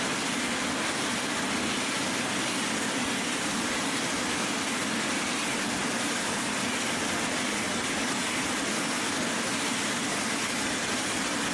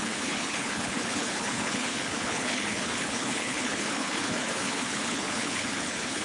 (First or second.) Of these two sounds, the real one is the first